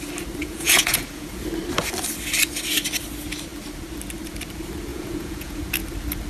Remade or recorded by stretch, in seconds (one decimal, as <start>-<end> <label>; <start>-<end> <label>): 0.0-0.4 recorded; 0.4-1.4 remade; 1.4-4.9 recorded; 4.9-5.6 remade; 5.6-6.3 recorded